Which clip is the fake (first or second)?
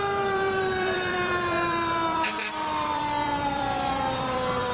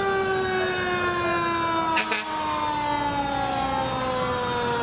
first